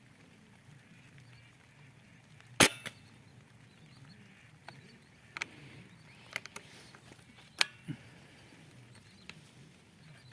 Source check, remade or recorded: recorded